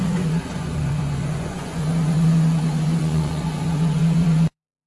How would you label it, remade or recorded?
remade